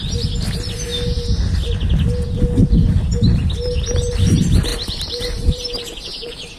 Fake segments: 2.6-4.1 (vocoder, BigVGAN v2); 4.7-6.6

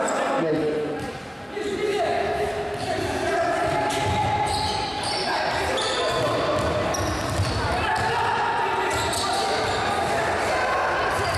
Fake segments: 1.9-2.5 (autoencoder, DAC-VAE)

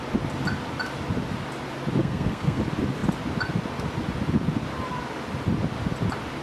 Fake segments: 2.0-2.6 (codec, SNAC)

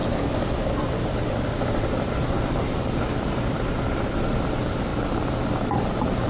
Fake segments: 1.8-4.9 (vocoder, BigVGAN v2)

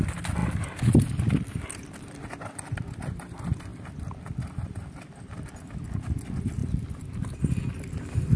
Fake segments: 0.4-1.1 (vocoder, BigVGAN v2); 6.6-7.4

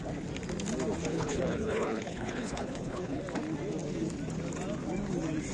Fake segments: 1.1-3.2 (codec, HILCodec)

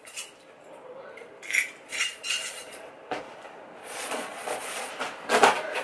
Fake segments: 1.9-2.9 (vocoder, Vocos); 3.8-4.9

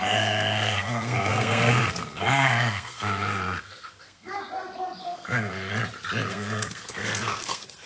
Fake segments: 0.0-4.4 (codec, SNAC); 5.0-5.7; 6.3-7.9